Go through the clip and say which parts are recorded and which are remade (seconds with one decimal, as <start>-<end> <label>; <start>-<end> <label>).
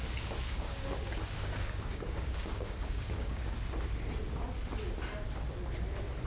0.0-3.5 remade; 3.5-6.3 recorded